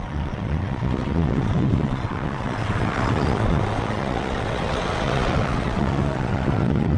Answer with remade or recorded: remade